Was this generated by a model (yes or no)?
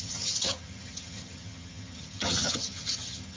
yes